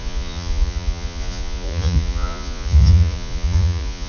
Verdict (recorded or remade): remade